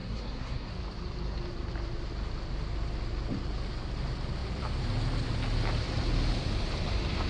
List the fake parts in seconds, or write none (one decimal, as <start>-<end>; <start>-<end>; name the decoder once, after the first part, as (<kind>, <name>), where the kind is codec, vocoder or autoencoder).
0.0-0.7 (codec, SNAC)